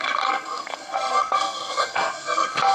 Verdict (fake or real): fake